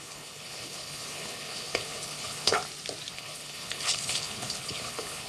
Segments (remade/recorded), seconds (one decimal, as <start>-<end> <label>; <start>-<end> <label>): 0.0-2.6 remade; 2.6-3.1 recorded; 3.1-5.3 remade